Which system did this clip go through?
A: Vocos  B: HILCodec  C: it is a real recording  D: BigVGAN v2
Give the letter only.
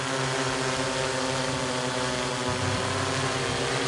C